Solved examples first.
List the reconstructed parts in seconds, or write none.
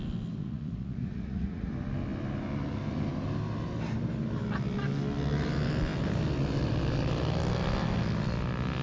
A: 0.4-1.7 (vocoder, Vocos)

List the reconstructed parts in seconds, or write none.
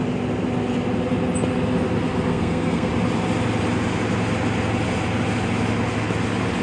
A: 2.3-2.9 (codec, SNAC)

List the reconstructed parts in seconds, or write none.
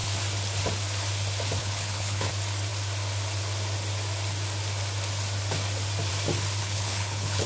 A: 1.6-2.3 (codec, HILCodec); 6.6-7.5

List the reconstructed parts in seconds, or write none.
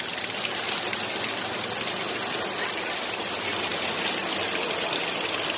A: none